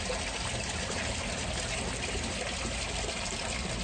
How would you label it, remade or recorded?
recorded